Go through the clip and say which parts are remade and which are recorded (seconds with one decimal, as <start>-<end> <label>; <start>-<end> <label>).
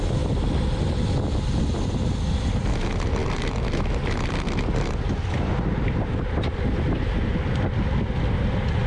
0.0-8.9 recorded